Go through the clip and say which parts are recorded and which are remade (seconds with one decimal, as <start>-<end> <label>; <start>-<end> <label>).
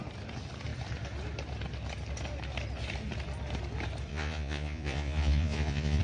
0.0-4.1 recorded; 4.1-6.0 remade